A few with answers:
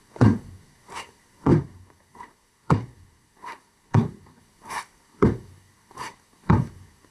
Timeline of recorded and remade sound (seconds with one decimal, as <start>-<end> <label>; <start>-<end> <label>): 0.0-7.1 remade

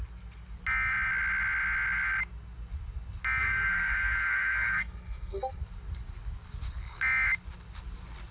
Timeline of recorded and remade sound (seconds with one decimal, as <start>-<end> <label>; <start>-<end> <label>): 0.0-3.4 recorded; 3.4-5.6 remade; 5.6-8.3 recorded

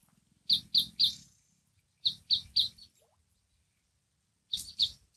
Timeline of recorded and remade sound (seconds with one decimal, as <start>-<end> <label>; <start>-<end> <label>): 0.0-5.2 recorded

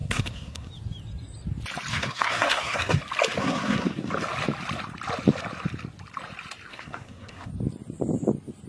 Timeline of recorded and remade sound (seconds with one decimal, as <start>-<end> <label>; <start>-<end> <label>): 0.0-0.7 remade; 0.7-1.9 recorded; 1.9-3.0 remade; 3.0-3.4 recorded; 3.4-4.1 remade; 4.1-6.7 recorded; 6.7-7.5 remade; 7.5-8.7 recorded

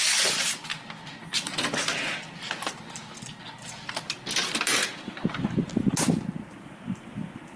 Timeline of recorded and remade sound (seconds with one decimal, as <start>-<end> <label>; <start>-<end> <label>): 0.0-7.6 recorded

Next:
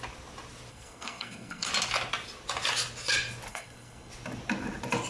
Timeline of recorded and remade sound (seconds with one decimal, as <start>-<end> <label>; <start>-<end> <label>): 0.0-0.7 recorded; 0.7-1.7 remade; 1.7-3.5 recorded; 3.5-4.1 remade; 4.1-5.1 recorded